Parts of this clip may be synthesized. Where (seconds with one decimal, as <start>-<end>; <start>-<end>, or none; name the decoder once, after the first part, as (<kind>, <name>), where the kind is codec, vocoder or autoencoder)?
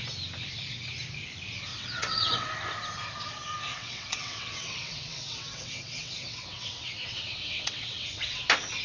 1.7-2.5 (vocoder, WaveNeXt); 3.7-8.4